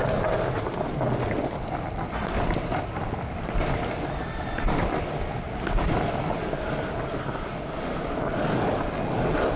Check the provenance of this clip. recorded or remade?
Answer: recorded